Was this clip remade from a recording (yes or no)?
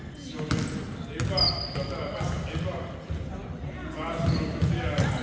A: no